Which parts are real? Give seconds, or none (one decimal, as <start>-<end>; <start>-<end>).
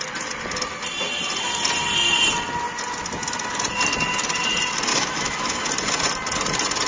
0.0-4.9; 5.7-6.9